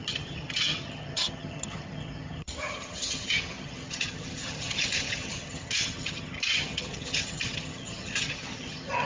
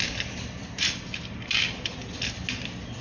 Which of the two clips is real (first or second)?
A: second